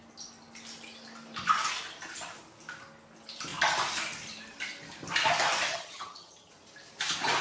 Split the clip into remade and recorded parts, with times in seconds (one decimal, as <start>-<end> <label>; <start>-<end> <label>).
0.0-5.7 recorded; 5.7-6.5 remade; 6.5-7.4 recorded